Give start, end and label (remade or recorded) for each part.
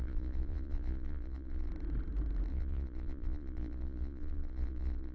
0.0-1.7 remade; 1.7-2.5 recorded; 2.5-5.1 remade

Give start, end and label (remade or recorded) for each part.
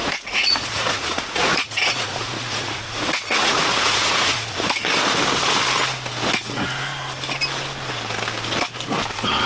0.0-4.7 remade; 4.7-9.5 recorded